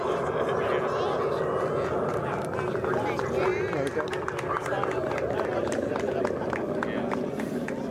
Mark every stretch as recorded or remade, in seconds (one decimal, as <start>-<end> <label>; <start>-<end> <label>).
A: 0.0-7.9 recorded